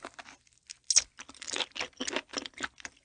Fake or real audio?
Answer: real